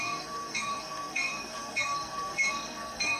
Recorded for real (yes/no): no